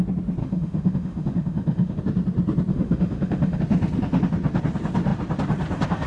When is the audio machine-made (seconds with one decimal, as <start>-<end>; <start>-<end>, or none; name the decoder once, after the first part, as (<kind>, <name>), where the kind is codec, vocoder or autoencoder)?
0.4-2.0 (autoencoder, DAC-VAE); 2.7-3.6

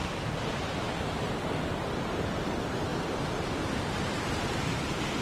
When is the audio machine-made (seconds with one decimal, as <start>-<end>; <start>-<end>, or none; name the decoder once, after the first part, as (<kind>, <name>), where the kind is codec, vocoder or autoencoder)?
0.0-2.9 (vocoder, BigVGAN v2); 4.4-5.2

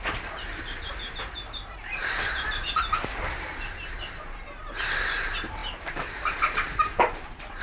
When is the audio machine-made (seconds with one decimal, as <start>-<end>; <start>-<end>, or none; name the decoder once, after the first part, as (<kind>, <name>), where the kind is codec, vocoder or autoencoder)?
0.0-7.6 (vocoder, BigVGAN v2)

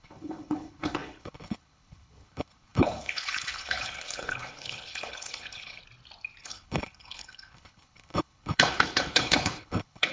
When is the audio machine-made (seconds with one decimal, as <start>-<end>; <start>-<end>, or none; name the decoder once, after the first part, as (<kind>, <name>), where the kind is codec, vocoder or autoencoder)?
0.0-5.8 (codec, HILCodec); 6.4-10.1

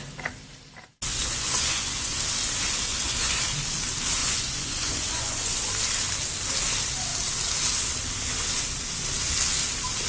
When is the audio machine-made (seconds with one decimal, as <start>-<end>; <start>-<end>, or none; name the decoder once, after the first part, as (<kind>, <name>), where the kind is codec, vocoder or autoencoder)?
1.1-2.2 (vocoder, Vocos); 2.9-3.5; 4.2-5.7

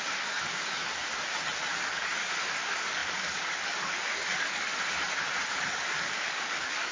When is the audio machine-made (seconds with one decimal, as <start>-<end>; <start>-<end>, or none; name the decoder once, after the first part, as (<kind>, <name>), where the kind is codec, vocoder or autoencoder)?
0.0-1.0 (codec, DAC); 1.7-4.7; 5.6-6.9

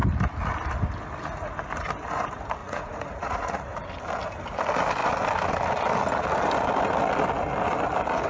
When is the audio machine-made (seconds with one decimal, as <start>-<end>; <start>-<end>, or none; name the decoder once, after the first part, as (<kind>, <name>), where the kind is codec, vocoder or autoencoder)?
2.6-3.8 (vocoder, Vocos)